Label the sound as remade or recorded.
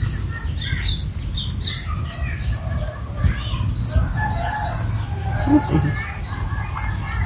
recorded